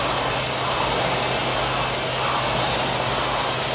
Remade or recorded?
recorded